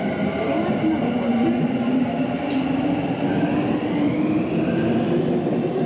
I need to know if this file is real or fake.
fake